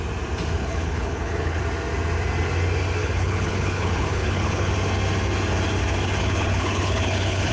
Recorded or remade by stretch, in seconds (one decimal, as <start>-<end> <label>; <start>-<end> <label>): 0.0-0.6 recorded; 0.6-1.6 remade; 1.6-3.0 recorded; 3.0-4.7 remade; 4.7-6.2 recorded; 6.2-7.5 remade